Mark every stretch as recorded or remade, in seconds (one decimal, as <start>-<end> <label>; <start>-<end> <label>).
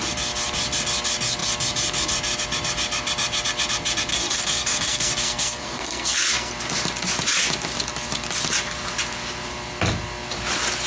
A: 0.0-4.1 recorded; 4.1-6.5 remade; 6.5-10.9 recorded